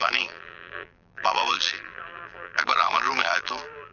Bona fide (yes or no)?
no